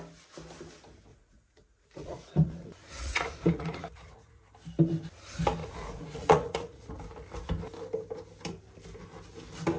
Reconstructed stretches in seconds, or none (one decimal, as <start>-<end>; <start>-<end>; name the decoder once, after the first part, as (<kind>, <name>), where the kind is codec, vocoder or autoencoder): 1.1-4.4 (vocoder, Vocos); 5.6-6.9